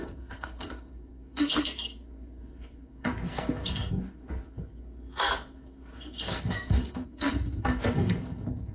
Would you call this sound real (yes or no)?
no